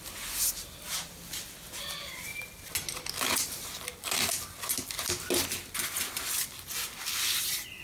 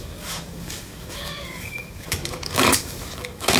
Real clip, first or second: first